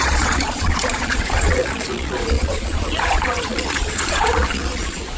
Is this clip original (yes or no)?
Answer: no